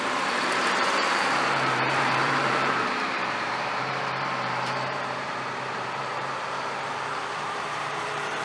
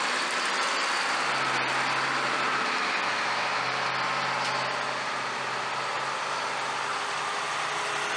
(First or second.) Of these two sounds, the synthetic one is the first